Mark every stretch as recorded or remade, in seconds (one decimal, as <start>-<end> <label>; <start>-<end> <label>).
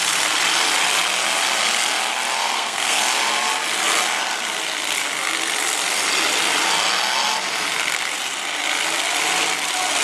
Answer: 0.0-2.4 recorded; 2.4-3.0 remade; 3.0-10.0 recorded